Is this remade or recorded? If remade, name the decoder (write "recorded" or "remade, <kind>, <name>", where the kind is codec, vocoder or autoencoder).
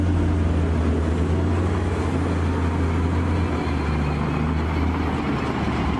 recorded